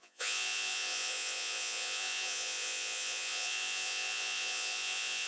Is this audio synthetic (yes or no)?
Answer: yes